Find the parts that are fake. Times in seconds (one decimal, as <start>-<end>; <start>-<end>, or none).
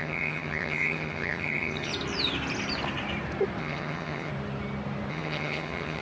0.0-1.9; 3.6-4.3; 5.1-6.0